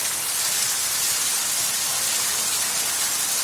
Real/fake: real